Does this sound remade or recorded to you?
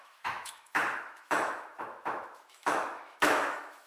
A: remade